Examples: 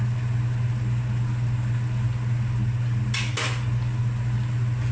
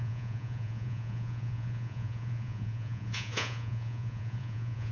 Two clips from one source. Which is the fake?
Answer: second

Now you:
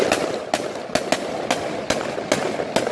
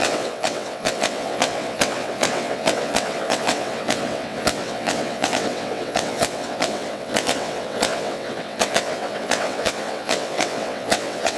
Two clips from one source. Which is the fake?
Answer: second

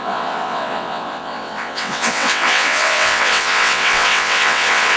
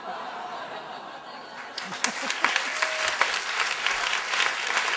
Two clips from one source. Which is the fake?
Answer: first